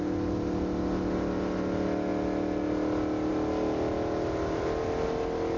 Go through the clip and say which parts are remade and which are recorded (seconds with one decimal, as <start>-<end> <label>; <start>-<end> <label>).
0.0-5.6 recorded